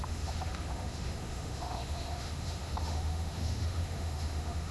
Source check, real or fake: fake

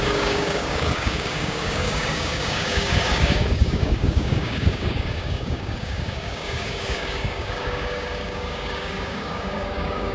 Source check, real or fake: fake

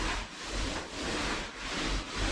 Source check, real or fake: real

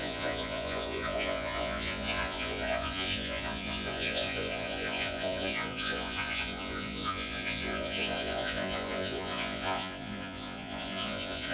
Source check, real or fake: fake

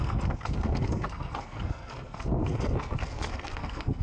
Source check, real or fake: fake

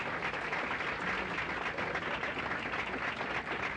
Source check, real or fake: real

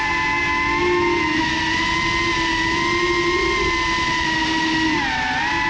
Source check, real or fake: real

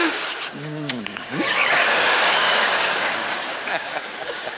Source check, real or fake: fake